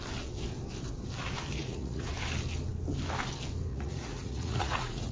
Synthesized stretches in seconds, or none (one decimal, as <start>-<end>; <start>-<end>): 1.6-2.1; 3.7-5.1